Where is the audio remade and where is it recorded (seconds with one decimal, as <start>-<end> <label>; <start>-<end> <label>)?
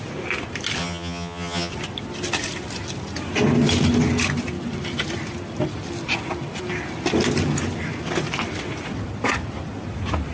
0.0-0.8 recorded; 0.8-1.7 remade; 1.7-10.3 recorded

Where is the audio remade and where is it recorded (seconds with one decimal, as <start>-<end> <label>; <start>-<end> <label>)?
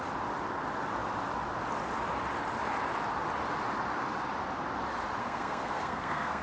0.0-5.2 recorded; 5.2-6.4 remade